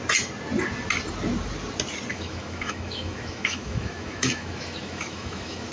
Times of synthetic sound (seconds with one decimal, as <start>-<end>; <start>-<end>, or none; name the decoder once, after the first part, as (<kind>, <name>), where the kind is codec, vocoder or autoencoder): 2.1-5.7 (autoencoder, DAC-VAE)